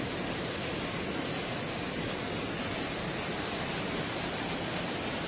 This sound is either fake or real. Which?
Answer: real